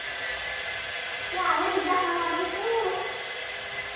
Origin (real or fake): real